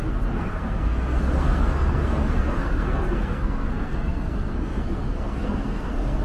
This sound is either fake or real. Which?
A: fake